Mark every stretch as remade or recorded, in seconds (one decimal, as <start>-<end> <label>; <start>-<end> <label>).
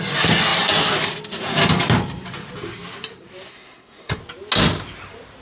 0.0-3.5 recorded; 3.5-4.2 remade; 4.2-5.4 recorded